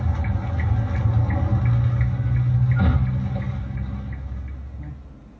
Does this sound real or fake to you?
real